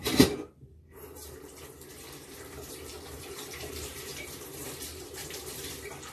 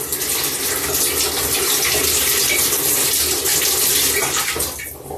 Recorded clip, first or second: second